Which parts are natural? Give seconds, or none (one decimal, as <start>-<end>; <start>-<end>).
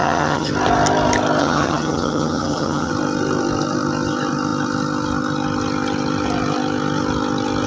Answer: 0.5-1.4; 2.9-7.7